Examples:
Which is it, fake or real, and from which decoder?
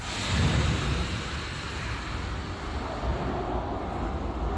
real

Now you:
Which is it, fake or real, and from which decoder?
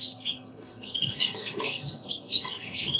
fake, codec, SNAC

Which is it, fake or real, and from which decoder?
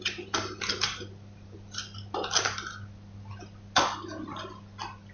real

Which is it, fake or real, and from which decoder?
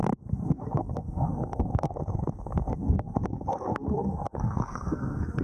fake, codec, SNAC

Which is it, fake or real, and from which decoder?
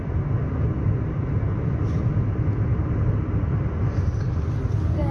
real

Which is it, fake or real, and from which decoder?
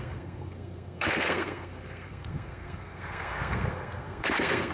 fake, codec, SNAC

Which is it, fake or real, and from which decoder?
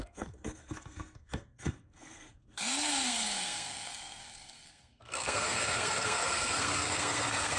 fake, codec, SNAC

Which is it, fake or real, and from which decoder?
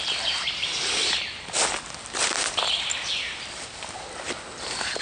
real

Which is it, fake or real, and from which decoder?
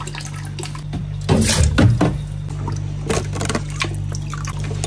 real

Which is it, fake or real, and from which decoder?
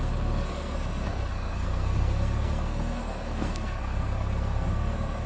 fake, codec, SNAC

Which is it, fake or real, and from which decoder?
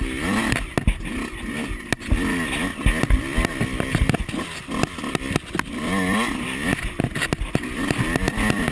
real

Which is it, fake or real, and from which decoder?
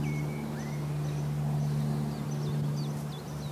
real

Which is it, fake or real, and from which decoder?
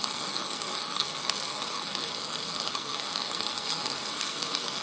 fake, codec, SNAC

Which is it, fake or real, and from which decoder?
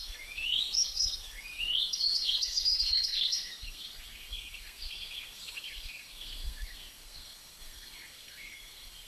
fake, codec, SNAC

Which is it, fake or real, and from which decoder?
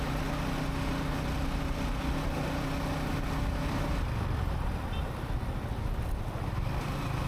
real